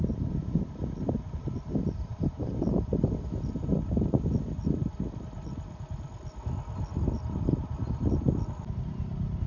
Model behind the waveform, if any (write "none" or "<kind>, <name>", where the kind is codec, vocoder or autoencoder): none